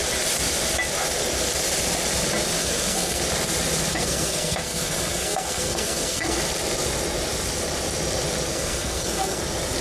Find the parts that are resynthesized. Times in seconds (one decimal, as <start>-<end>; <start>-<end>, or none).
2.6-3.2; 3.9-6.4; 8.5-9.4